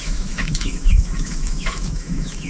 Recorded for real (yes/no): no